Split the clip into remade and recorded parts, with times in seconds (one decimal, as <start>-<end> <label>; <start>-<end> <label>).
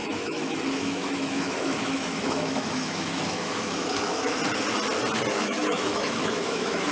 0.0-4.4 remade; 4.4-5.3 recorded; 5.3-6.9 remade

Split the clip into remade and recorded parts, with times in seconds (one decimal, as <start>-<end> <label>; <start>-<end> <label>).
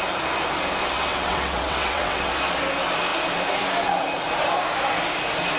0.0-1.1 recorded; 1.1-2.3 remade; 2.3-5.6 recorded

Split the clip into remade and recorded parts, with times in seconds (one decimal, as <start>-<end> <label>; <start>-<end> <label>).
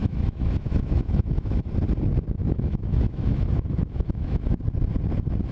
0.0-1.6 remade; 1.6-2.4 recorded; 2.4-4.6 remade; 4.6-5.5 recorded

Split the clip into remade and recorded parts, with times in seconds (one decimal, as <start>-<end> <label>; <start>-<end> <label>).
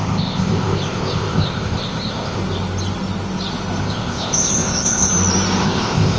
0.0-2.4 remade; 2.4-3.8 recorded; 3.8-5.1 remade; 5.1-5.6 recorded; 5.6-6.2 remade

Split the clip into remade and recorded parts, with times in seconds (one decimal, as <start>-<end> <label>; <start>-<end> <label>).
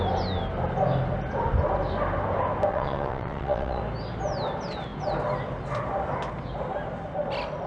0.0-2.7 recorded; 2.7-3.8 remade; 3.8-7.7 recorded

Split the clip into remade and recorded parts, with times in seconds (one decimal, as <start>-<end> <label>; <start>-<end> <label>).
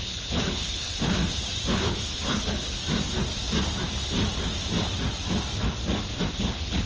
0.0-1.2 remade; 1.2-1.7 recorded; 1.7-2.8 remade; 2.8-6.4 recorded; 6.4-6.9 remade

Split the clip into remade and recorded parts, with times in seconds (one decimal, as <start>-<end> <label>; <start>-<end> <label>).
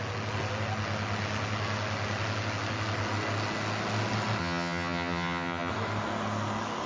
0.0-4.4 recorded; 4.4-5.7 remade; 5.7-6.9 recorded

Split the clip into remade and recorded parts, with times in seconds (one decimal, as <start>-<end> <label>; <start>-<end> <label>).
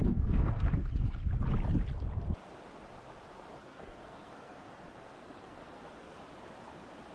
0.0-1.2 remade; 1.2-3.6 recorded; 3.6-6.2 remade; 6.2-7.1 recorded